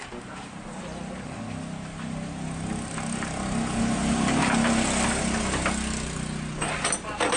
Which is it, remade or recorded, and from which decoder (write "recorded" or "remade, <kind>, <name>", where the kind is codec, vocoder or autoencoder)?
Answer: recorded